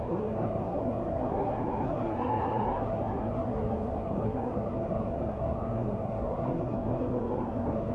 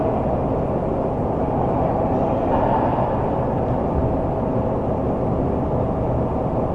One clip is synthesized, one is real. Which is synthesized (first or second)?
first